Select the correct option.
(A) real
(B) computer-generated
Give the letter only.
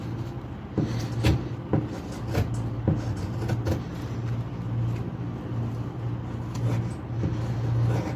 A